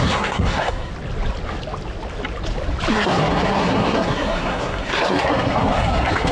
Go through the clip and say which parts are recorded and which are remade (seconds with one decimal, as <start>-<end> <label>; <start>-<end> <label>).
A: 0.0-0.9 remade; 0.9-2.9 recorded; 2.9-6.3 remade

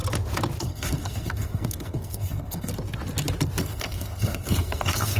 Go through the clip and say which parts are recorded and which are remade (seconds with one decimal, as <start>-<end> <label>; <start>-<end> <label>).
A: 0.0-0.6 recorded; 0.6-2.7 remade; 2.7-3.6 recorded; 3.6-5.2 remade